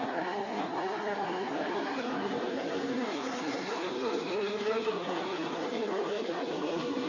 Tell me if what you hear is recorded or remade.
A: remade